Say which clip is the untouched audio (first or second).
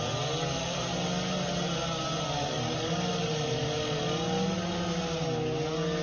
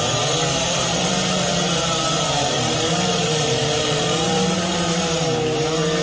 first